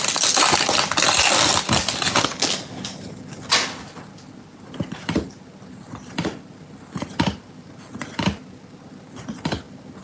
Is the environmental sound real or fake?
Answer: real